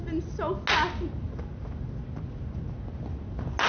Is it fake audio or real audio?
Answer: real